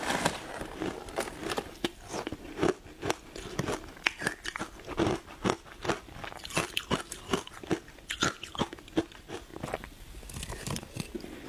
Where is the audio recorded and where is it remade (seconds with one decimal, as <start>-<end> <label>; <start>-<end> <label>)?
0.0-11.5 recorded